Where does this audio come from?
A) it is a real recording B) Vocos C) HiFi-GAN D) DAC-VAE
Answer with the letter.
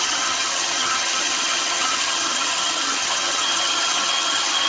C